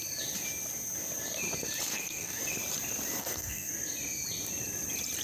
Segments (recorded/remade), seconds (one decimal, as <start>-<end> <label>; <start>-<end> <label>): 0.0-1.9 recorded; 1.9-2.4 remade; 2.4-3.2 recorded; 3.2-3.7 remade; 3.7-5.2 recorded

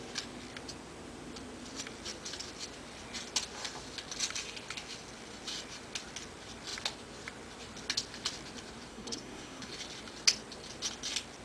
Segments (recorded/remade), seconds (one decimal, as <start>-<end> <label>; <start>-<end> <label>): 0.0-8.9 recorded; 8.9-9.7 remade; 9.7-11.4 recorded